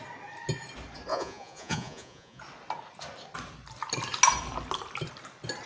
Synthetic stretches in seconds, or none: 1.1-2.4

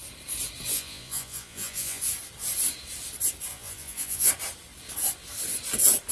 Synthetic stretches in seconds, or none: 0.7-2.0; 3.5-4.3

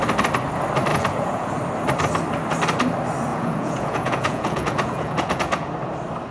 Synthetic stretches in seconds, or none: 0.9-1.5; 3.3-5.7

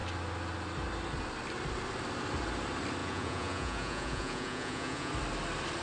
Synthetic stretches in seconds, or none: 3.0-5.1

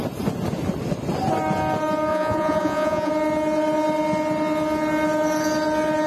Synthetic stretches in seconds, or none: 2.1-3.1